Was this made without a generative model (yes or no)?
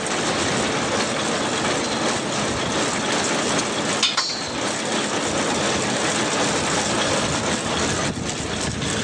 yes